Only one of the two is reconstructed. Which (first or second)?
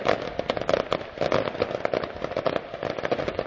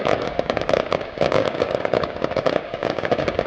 second